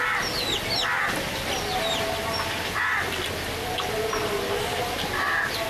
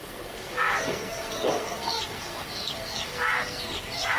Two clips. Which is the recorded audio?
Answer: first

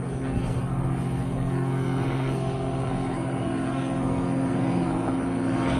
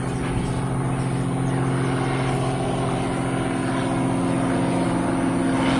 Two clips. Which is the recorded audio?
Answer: second